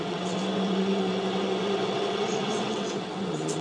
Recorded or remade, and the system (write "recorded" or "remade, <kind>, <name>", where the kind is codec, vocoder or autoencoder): remade, vocoder, WaveNeXt